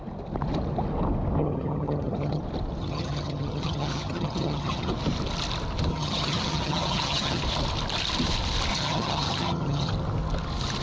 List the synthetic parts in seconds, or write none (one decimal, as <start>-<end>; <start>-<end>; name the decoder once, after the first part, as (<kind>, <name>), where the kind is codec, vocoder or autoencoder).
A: 1.4-2.4 (vocoder, HiFi-GAN); 2.8-4.9; 5.9-7.4; 8.7-9.9